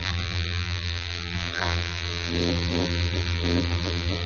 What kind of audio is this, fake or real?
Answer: fake